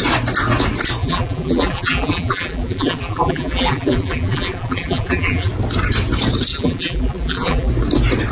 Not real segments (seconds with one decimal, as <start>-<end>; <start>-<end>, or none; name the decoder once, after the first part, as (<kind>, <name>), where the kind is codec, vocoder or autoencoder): 1.0-5.5 (vocoder, BigVGAN v2); 6.5-7.7

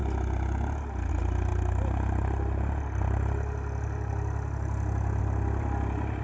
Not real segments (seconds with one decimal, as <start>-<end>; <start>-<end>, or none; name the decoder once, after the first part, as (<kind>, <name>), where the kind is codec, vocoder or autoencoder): 1.1-1.5 (vocoder, BigVGAN v2); 5.2-6.2

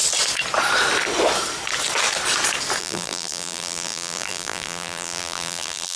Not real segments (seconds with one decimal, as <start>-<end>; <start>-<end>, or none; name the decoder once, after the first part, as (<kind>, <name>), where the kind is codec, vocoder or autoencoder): 2.8-6.0 (vocoder, BigVGAN v2)

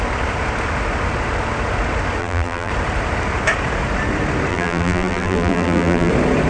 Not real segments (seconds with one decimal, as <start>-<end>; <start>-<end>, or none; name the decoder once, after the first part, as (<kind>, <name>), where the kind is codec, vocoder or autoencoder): 2.2-2.7 (vocoder, BigVGAN v2); 4.5-6.1